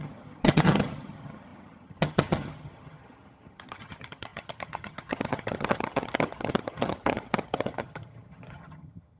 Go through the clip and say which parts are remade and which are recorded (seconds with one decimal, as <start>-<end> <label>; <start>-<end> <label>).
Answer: 0.0-9.2 remade